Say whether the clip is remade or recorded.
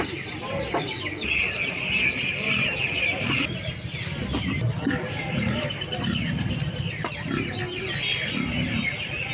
recorded